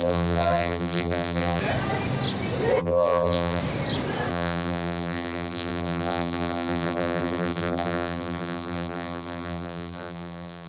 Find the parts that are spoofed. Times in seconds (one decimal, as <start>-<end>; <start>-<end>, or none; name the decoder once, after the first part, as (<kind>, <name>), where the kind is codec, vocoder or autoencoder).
0.0-1.6 (vocoder, BigVGAN v2); 2.8-3.6; 4.3-10.7